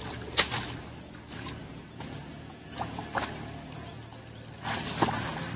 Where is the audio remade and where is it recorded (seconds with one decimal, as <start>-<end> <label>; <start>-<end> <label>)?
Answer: 0.0-1.6 recorded; 1.6-3.0 remade; 3.0-5.6 recorded